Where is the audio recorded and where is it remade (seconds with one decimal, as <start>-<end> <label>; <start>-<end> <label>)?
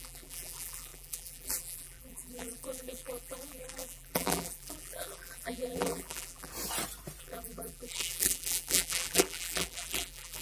0.0-6.5 remade; 6.5-7.2 recorded; 7.2-10.4 remade